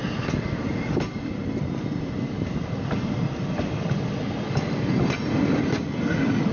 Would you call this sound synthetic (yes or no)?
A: no